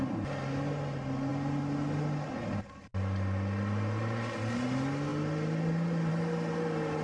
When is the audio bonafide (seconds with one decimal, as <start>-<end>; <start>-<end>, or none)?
0.0-7.0